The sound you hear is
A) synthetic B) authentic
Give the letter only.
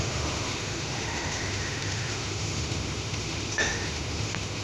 A